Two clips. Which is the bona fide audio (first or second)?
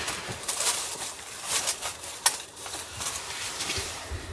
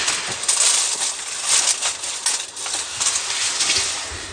second